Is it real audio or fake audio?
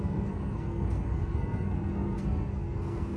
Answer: fake